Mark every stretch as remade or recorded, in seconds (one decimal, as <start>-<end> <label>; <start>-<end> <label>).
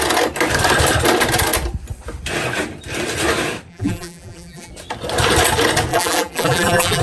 0.0-3.7 recorded; 3.7-4.7 remade; 4.7-5.9 recorded; 5.9-7.0 remade